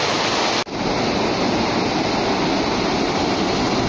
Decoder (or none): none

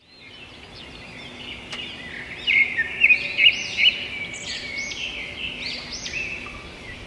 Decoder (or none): none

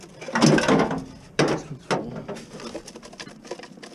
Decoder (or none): none